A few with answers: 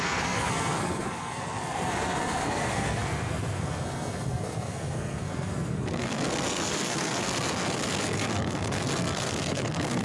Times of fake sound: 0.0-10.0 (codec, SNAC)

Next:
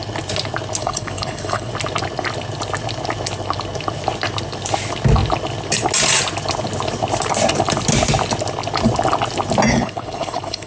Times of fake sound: 0.8-1.7 (codec, HILCodec); 9.7-10.7

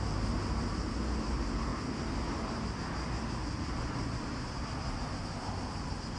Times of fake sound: none

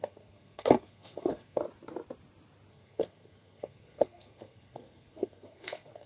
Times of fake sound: 0.0-1.6 (codec, SNAC); 2.7-6.1